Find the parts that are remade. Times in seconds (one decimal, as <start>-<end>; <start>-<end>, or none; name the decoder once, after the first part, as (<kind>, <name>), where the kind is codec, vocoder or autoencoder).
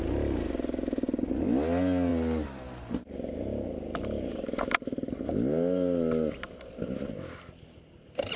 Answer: none